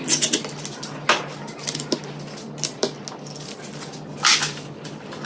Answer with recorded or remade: recorded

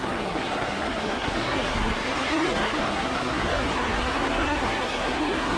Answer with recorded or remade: remade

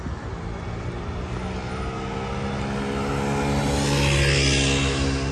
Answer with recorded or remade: recorded